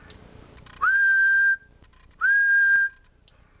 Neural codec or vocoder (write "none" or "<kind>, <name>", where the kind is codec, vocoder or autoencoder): none